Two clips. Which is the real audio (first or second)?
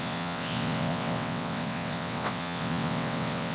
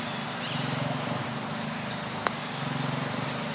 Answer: second